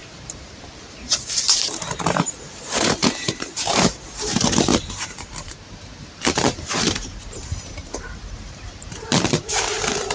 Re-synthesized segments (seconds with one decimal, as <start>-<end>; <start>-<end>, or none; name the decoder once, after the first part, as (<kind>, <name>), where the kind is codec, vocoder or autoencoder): 0.0-10.1 (vocoder, BigVGAN v2)